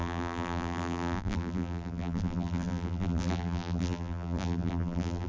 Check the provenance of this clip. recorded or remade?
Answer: remade